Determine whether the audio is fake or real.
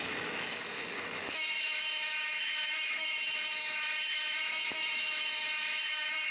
fake